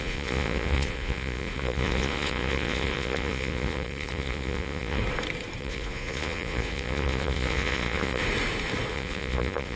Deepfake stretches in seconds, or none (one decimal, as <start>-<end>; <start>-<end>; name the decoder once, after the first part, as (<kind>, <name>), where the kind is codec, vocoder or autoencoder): 0.0-5.0 (vocoder, Vocos); 5.6-8.2; 8.9-9.8